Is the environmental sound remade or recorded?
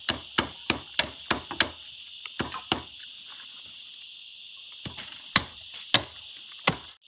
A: recorded